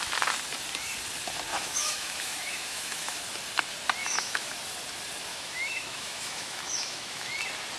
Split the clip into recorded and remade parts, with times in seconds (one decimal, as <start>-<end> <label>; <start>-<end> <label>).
0.0-1.5 recorded; 1.5-3.2 remade; 3.2-4.0 recorded; 4.0-4.6 remade; 4.6-5.3 recorded; 5.3-7.3 remade; 7.3-7.8 recorded